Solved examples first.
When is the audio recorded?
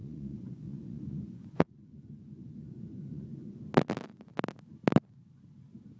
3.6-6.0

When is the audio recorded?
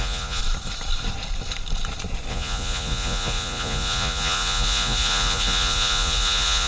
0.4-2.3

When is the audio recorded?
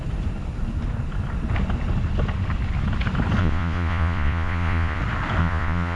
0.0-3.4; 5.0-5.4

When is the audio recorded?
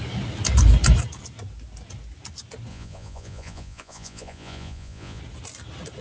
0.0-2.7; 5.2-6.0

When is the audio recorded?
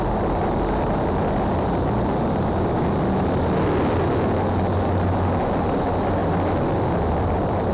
0.0-7.7